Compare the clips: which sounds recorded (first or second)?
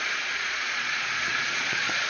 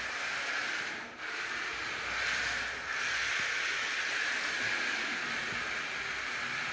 second